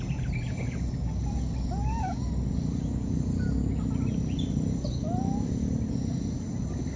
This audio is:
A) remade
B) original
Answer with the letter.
B